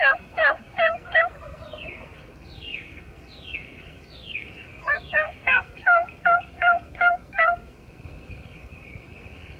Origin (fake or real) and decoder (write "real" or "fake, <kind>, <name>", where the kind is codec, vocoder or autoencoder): fake, codec, SNAC